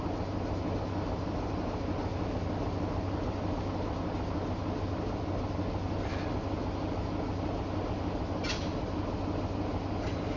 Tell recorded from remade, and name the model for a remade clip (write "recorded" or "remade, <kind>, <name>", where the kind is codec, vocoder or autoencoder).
recorded